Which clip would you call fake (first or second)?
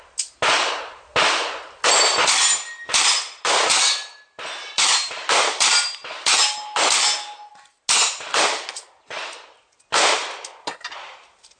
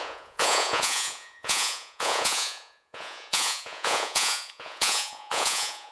second